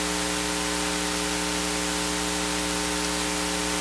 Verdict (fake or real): real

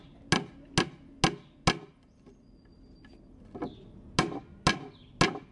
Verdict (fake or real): real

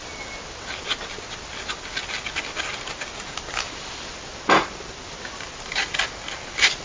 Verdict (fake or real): real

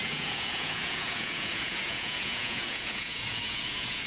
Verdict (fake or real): fake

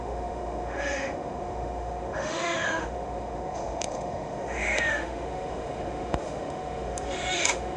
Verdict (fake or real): fake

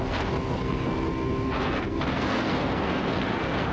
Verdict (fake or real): fake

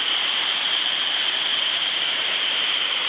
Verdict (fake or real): fake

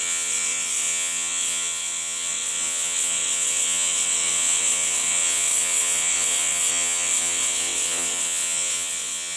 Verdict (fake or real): fake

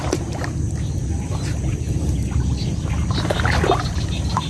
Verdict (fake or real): real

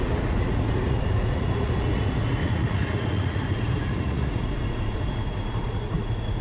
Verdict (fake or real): fake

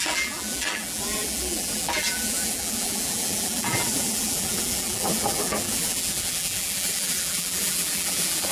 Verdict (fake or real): fake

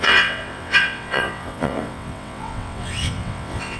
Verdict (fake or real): fake